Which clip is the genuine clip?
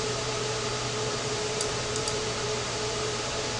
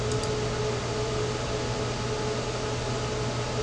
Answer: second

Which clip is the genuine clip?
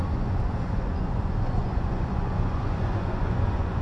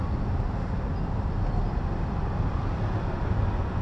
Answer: second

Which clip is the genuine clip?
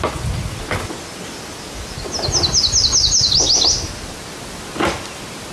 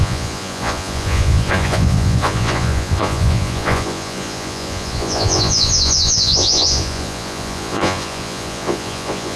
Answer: first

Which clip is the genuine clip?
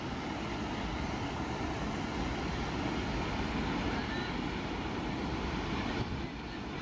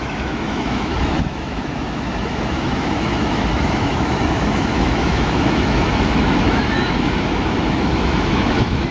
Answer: first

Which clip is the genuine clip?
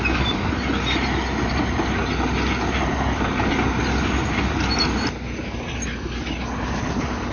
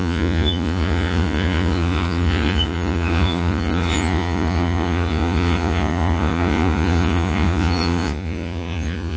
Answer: first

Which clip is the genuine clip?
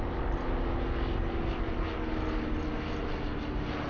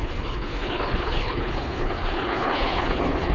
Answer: first